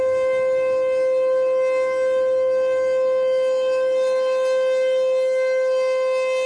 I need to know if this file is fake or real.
real